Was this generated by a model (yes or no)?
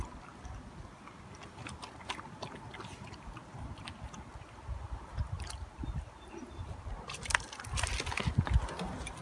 no